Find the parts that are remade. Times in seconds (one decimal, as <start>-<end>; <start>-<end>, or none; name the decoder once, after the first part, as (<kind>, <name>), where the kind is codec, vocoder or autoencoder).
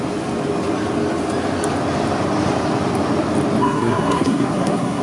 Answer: 3.6-5.0 (codec, SNAC)